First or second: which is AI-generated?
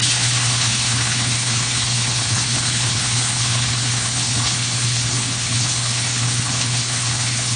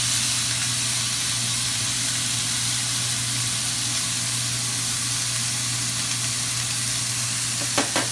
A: first